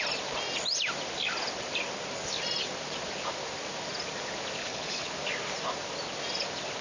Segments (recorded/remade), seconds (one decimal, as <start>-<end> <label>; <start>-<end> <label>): 0.0-4.6 recorded; 4.6-5.1 remade; 5.1-6.8 recorded